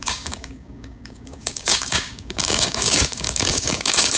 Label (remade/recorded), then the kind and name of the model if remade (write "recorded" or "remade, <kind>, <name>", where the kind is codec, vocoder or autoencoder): remade, codec, DAC